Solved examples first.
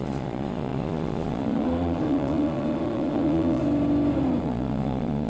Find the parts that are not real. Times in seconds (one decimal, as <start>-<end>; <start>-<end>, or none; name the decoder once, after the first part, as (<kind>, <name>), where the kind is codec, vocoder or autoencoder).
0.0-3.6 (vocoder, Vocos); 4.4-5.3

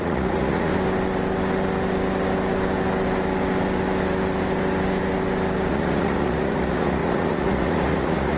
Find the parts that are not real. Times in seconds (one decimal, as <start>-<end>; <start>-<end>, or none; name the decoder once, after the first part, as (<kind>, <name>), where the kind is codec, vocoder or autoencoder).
0.0-0.7 (vocoder, Vocos); 5.7-8.4

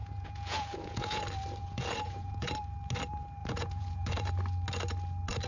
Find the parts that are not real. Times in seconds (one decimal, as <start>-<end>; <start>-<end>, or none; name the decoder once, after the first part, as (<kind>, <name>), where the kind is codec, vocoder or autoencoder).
0.0-1.2 (vocoder, Vocos); 1.6-2.5; 3.4-4.3